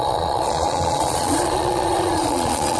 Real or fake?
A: fake